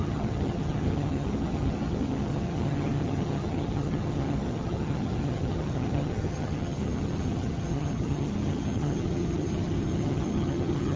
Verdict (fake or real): fake